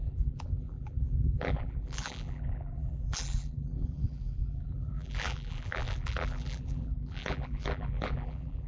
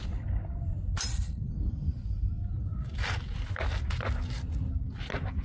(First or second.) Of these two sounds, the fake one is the first